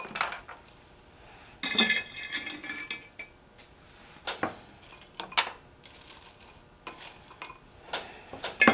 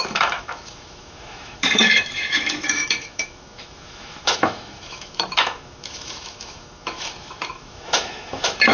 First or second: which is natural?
first